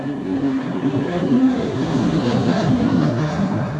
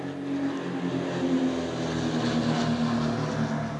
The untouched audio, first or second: second